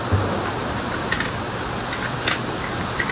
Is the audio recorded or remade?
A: recorded